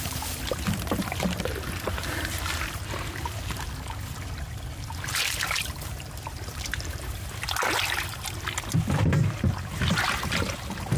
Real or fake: fake